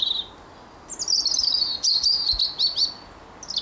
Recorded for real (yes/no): yes